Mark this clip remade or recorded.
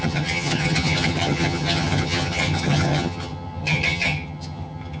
remade